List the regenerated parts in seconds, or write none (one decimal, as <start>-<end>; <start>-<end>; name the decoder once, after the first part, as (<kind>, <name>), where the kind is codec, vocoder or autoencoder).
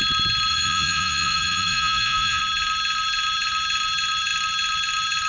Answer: 0.5-2.4 (vocoder, Vocos)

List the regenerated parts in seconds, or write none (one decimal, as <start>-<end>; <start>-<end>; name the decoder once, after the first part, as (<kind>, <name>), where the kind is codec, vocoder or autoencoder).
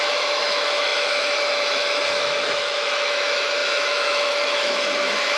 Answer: 0.0-5.4 (autoencoder, DAC-VAE)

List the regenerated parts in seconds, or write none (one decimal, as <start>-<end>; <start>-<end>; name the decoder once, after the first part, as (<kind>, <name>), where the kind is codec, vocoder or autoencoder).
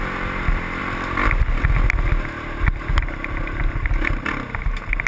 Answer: none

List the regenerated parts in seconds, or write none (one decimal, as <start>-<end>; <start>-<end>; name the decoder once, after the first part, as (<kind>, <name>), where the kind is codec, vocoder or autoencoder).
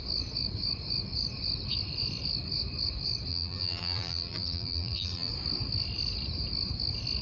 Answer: 3.3-5.3 (vocoder, BigVGAN v2)